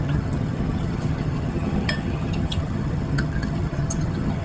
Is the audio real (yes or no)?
no